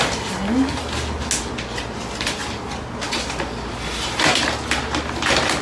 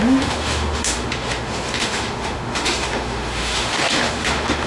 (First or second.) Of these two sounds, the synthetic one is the second